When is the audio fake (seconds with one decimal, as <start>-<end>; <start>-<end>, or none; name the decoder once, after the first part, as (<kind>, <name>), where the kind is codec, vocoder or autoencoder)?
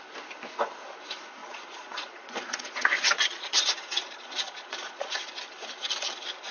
1.4-5.3 (vocoder, Vocos)